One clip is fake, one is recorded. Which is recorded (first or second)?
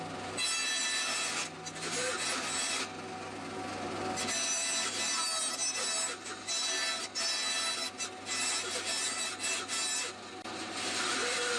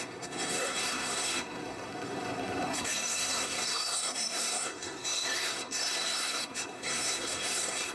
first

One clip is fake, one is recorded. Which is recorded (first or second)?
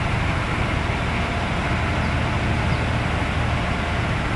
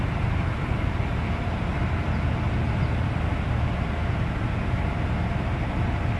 first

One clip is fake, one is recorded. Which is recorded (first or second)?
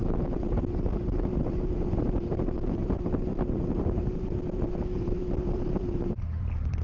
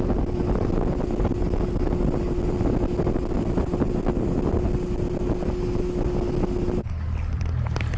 second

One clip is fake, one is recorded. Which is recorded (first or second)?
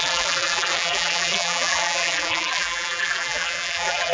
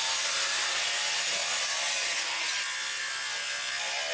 second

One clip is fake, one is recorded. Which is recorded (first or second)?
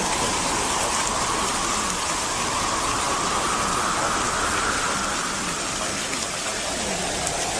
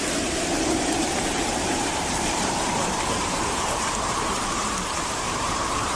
first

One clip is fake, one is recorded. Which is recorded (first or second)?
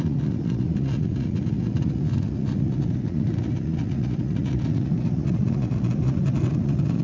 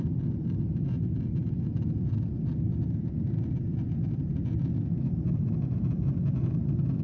second